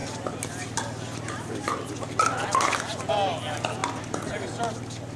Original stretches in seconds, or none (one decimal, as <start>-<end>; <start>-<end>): 0.0-5.2